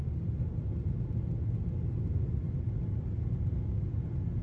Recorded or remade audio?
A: recorded